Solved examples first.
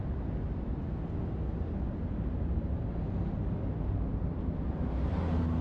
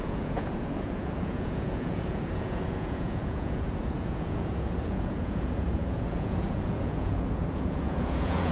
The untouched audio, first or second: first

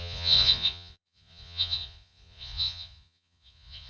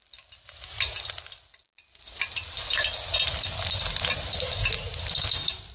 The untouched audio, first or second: second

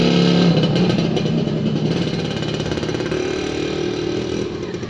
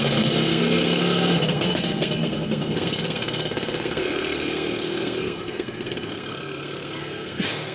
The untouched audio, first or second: first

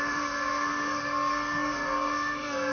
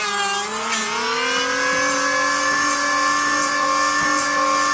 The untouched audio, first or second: second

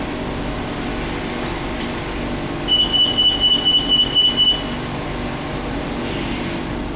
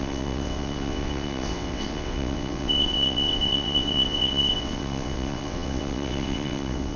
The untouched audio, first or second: first